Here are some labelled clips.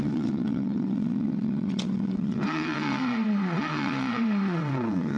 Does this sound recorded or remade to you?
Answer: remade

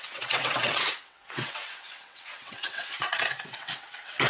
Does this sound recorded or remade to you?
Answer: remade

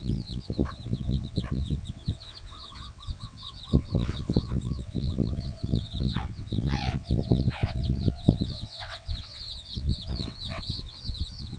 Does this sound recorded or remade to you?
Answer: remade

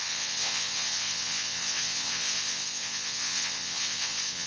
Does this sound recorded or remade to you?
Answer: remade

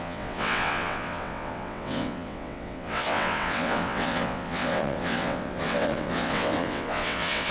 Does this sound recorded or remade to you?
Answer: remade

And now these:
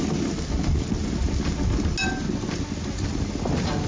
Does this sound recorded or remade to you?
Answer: recorded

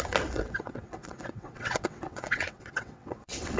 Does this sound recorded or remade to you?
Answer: remade